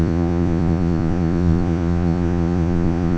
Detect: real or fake fake